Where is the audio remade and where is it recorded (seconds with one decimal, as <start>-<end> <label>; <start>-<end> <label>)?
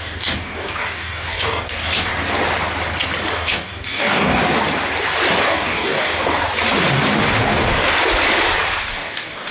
0.0-2.1 remade; 2.1-3.3 recorded; 3.3-4.4 remade; 4.4-5.4 recorded; 5.4-6.1 remade; 6.1-8.8 recorded; 8.8-9.5 remade